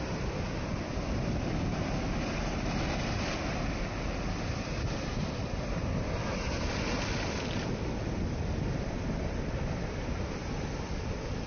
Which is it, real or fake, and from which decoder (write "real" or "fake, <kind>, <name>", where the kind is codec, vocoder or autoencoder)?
real